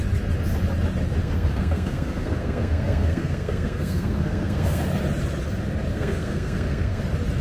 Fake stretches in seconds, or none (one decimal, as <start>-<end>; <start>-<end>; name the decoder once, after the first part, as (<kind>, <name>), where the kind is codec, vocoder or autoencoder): 1.2-4.8 (codec, SNAC); 5.9-7.0